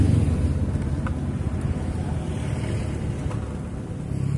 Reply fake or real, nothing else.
real